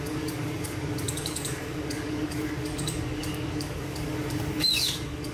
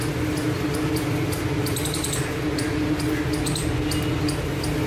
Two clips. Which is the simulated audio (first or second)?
first